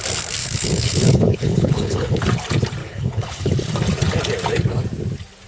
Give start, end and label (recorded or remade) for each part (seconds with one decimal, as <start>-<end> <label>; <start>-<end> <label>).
0.0-0.4 recorded; 0.4-2.2 remade; 2.2-2.8 recorded; 2.8-3.5 remade; 3.5-5.5 recorded